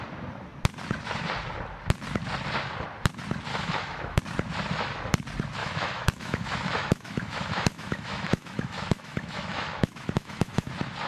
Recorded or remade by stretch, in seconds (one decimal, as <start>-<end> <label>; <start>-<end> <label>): 0.0-3.5 recorded; 3.5-4.2 remade; 4.2-5.6 recorded; 5.6-10.7 remade; 10.7-11.1 recorded